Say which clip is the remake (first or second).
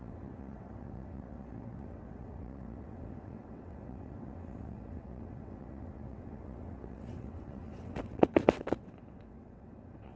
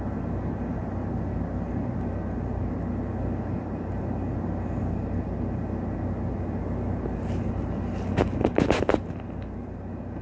first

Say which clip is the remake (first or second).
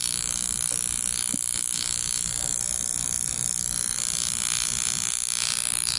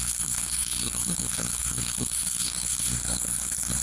second